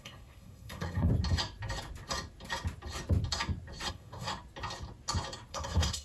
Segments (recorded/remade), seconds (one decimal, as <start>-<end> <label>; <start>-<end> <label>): 0.0-1.1 remade; 1.1-3.9 recorded; 3.9-4.3 remade; 4.3-5.5 recorded; 5.5-6.0 remade